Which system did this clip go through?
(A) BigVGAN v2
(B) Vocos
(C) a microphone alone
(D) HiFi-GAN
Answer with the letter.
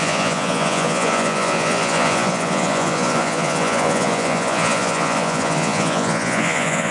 B